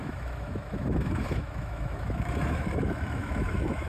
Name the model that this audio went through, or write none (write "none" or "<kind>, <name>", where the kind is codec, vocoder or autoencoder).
autoencoder, DAC-VAE